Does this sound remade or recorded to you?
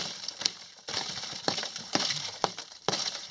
remade